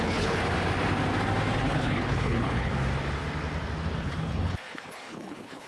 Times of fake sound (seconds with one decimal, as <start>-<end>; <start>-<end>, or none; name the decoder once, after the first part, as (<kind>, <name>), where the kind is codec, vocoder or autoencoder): 0.0-0.4 (codec, HILCodec); 1.6-2.7; 4.0-5.7